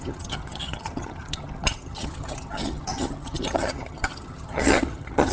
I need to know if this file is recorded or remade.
remade